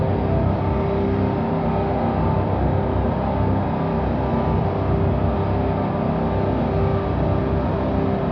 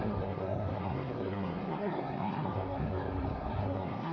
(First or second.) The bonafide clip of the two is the first